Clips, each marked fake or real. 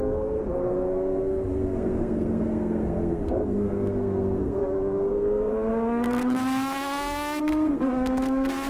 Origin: fake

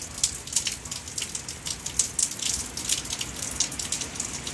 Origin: real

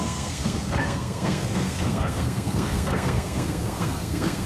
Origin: fake